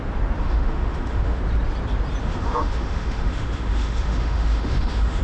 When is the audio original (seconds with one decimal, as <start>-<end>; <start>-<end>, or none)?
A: 0.0-0.4; 1.4-2.2